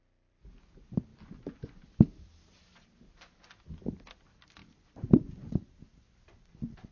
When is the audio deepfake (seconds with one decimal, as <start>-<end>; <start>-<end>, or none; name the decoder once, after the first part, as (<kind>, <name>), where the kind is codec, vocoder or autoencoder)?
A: 0.0-6.9 (vocoder, BigVGAN v2)